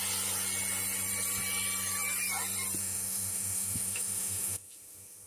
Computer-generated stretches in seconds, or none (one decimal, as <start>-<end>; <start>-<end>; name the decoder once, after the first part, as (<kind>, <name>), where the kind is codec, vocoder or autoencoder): 2.8-5.3 (autoencoder, DAC-VAE)